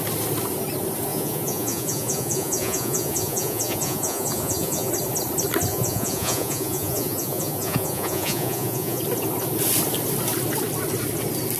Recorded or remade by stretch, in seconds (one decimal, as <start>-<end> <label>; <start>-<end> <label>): 0.0-1.1 recorded; 1.1-4.9 remade; 4.9-5.7 recorded; 5.7-9.0 remade; 9.0-11.6 recorded